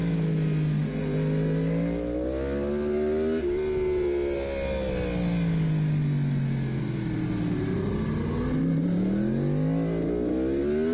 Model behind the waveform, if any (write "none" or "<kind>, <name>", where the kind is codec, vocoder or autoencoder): none